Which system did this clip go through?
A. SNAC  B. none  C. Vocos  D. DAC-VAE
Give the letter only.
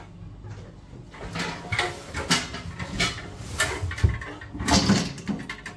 B